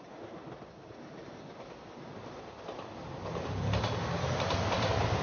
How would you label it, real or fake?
real